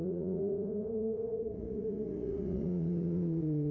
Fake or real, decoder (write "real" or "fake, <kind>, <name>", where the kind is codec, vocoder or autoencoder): fake, vocoder, Vocos